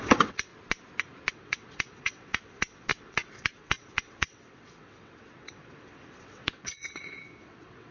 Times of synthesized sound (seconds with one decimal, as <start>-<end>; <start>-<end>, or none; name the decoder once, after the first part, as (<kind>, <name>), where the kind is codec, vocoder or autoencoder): 0.0-0.5 (vocoder, WaveNeXt); 1.3-7.9